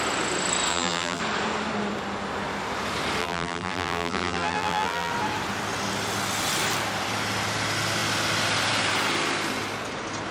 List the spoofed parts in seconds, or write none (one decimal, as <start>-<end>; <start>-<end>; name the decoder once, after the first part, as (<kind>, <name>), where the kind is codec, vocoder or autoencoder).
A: 0.7-1.2 (vocoder, BigVGAN v2); 3.2-5.1